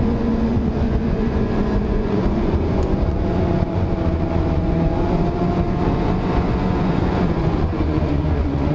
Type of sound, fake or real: fake